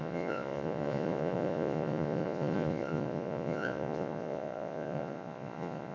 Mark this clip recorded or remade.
remade